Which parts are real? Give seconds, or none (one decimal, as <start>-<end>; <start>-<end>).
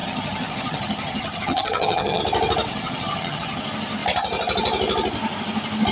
2.2-2.7; 3.6-5.9